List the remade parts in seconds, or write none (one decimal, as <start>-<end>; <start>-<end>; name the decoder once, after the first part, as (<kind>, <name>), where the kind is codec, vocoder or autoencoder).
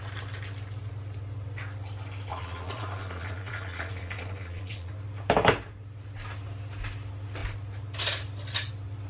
2.3-4.9 (vocoder, Vocos)